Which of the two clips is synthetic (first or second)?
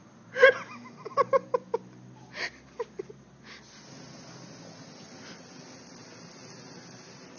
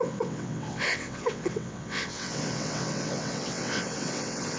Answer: second